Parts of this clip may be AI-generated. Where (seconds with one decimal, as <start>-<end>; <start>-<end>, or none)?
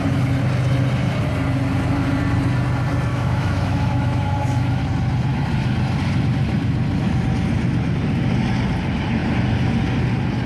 3.1-4.8